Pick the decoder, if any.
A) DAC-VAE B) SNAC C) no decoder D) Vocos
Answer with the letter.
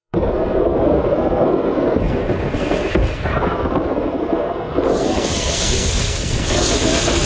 B